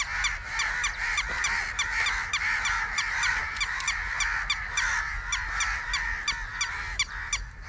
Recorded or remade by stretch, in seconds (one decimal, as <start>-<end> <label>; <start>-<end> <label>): 0.0-7.7 recorded